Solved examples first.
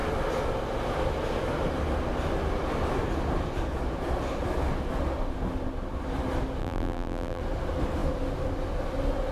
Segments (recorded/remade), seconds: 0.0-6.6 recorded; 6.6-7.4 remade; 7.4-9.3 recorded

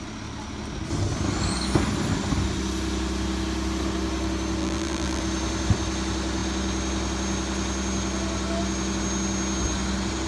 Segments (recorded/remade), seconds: 0.0-4.6 recorded; 4.6-5.2 remade; 5.2-10.3 recorded

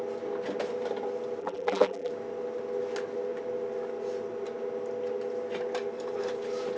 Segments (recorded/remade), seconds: 0.0-1.4 recorded; 1.4-2.1 remade; 2.1-6.8 recorded

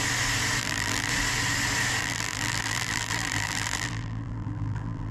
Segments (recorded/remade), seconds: 0.0-0.6 recorded; 0.6-1.1 remade; 1.1-2.0 recorded; 2.0-5.1 remade

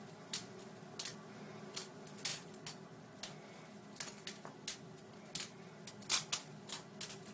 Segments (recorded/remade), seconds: 0.0-7.3 recorded

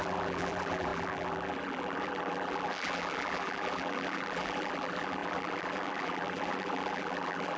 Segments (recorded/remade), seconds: 0.0-7.6 remade

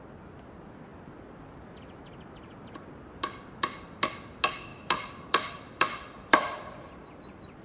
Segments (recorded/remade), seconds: 0.0-4.7 recorded; 4.7-7.6 remade

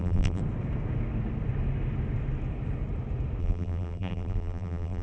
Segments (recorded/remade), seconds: 0.0-0.4 remade; 0.4-3.4 recorded; 3.4-5.0 remade